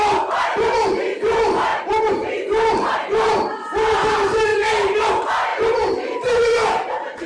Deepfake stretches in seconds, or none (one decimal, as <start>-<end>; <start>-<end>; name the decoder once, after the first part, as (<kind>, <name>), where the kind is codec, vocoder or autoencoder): 1.7-4.1 (vocoder, BigVGAN v2); 4.5-5.1; 5.5-7.3